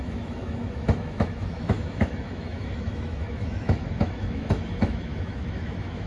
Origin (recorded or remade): remade